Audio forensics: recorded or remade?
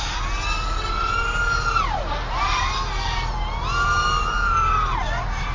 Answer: recorded